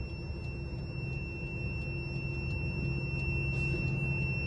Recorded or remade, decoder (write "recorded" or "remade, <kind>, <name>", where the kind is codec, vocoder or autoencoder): recorded